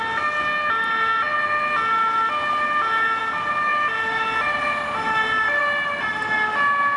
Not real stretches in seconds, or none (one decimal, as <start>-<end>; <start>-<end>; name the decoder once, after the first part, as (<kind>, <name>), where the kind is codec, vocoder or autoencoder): none